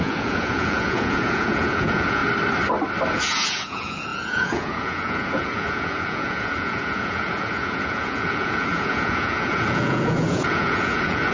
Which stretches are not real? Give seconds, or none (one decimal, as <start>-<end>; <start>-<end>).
0.0-2.2; 3.1-11.3